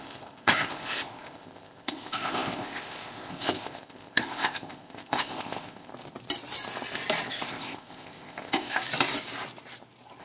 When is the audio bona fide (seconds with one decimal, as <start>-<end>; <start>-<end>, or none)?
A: 5.9-7.3; 8.8-10.2